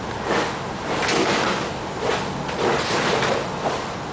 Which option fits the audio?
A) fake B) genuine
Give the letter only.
B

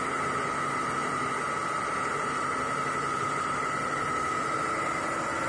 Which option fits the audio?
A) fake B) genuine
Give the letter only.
B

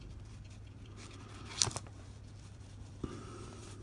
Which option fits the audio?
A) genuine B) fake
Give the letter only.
B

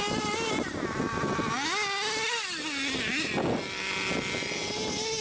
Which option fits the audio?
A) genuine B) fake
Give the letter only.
A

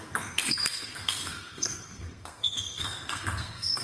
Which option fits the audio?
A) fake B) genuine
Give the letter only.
A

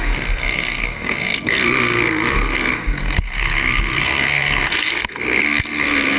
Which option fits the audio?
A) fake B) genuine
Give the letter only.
A